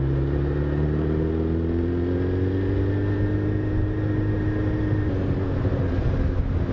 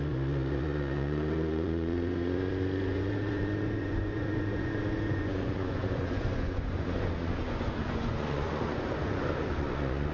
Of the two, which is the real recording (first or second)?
first